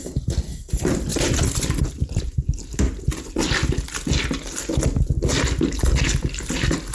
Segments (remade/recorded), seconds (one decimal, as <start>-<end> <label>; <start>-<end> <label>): 0.0-1.1 recorded; 1.1-2.3 remade; 2.3-6.9 recorded

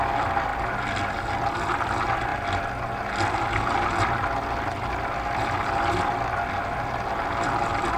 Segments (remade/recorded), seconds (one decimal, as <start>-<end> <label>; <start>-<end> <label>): 0.0-8.0 recorded

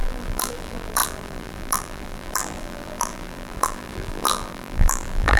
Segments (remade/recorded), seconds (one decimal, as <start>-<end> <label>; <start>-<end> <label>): 0.0-5.4 remade

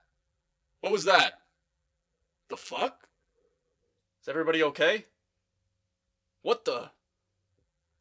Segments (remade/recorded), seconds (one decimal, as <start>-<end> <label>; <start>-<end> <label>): 0.0-3.8 remade; 3.8-7.5 recorded; 7.5-8.0 remade

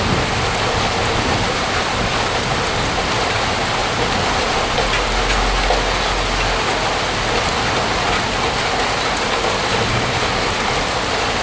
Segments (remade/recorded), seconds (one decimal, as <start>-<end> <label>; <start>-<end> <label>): 0.0-3.8 recorded; 3.8-4.6 remade; 4.6-11.4 recorded

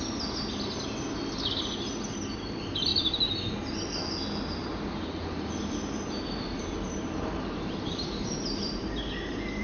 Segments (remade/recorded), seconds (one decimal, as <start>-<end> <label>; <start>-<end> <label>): 0.0-4.6 recorded; 4.6-8.7 remade; 8.7-9.6 recorded